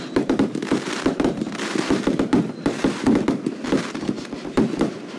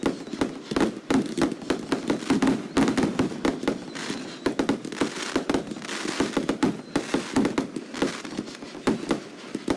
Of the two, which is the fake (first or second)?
first